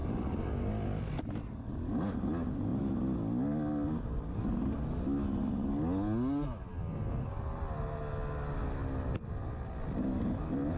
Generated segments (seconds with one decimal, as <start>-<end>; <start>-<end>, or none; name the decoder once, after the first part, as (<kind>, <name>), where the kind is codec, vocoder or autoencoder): none